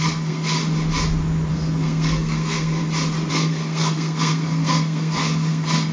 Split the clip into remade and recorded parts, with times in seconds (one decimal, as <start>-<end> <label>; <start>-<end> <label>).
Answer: 0.0-0.6 remade; 0.6-1.5 recorded; 1.5-2.8 remade; 2.8-3.3 recorded; 3.3-5.9 remade